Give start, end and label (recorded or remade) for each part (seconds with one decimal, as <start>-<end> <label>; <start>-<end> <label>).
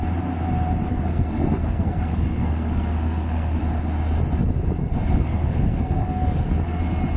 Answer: 0.0-0.9 recorded; 0.9-3.6 remade; 3.6-4.8 recorded; 4.8-6.8 remade; 6.8-7.2 recorded